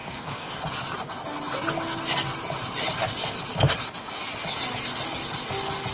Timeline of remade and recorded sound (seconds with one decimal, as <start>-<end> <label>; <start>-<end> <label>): 0.0-0.6 remade; 0.6-5.9 recorded